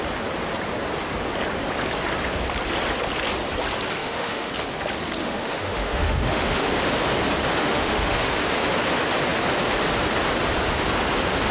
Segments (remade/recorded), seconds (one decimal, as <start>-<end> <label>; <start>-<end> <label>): 0.0-4.0 recorded; 4.0-4.5 remade; 4.5-5.2 recorded; 5.2-6.7 remade; 6.7-7.6 recorded; 7.6-8.3 remade; 8.3-11.5 recorded